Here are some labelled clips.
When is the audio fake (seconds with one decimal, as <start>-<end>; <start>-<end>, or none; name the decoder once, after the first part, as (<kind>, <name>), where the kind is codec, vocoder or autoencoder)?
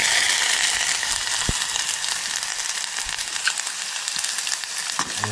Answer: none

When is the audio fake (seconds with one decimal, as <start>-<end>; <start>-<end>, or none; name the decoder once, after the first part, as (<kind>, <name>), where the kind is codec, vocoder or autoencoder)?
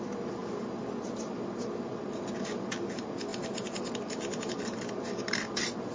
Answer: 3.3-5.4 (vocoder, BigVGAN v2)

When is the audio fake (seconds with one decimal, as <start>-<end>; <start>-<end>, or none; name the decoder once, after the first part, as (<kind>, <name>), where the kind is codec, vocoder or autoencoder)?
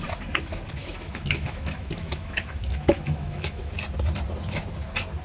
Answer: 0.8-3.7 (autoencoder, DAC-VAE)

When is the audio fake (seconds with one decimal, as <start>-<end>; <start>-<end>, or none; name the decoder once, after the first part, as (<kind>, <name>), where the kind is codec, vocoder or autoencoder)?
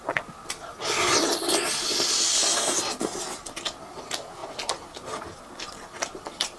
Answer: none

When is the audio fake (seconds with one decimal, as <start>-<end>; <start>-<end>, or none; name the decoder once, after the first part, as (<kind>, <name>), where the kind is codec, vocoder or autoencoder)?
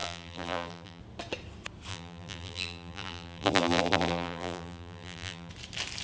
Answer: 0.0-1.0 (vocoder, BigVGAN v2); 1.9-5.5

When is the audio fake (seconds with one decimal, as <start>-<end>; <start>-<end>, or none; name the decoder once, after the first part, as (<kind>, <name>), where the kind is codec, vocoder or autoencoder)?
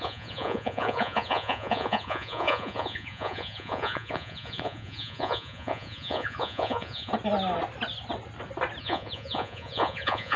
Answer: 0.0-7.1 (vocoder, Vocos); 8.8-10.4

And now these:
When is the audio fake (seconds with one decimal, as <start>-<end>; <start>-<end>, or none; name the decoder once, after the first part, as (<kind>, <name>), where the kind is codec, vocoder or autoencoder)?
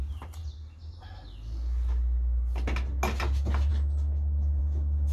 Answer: none